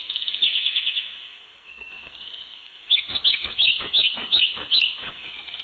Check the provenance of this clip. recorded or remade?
remade